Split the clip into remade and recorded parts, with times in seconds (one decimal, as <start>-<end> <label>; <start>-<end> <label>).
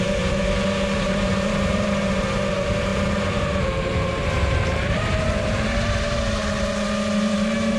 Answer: 0.0-7.8 remade